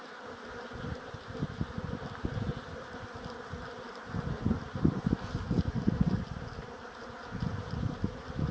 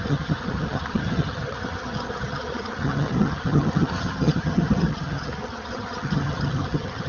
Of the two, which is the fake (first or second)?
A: second